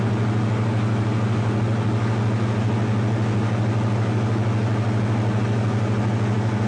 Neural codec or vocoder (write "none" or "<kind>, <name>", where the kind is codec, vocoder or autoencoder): none